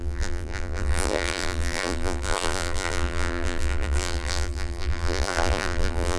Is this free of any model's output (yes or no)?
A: no